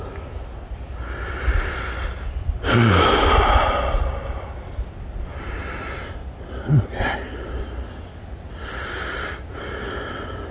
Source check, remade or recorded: recorded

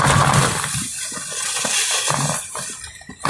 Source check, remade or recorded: recorded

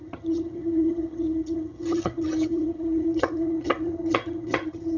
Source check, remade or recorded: remade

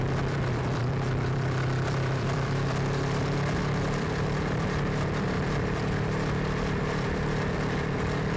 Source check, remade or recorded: remade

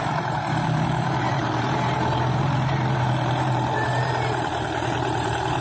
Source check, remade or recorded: remade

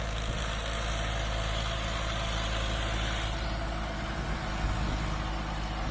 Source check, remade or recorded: recorded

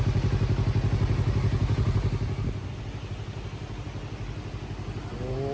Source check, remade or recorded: recorded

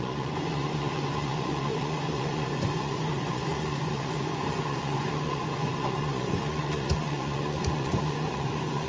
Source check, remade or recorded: remade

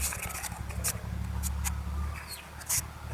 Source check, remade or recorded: recorded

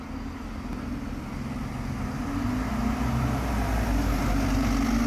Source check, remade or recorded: recorded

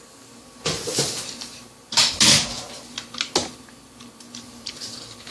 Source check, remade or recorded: recorded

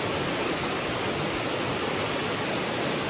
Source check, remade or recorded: recorded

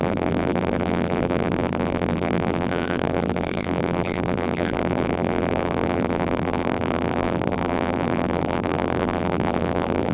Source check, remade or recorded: remade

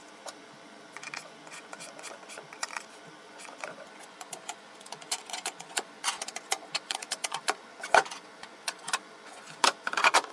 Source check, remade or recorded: remade